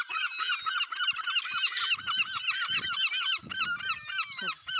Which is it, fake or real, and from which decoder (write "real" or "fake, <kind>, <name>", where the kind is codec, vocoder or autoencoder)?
real